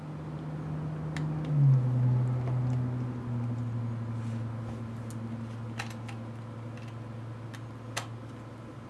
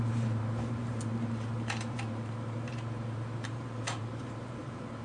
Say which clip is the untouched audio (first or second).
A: first